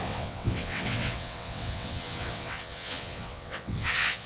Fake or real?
fake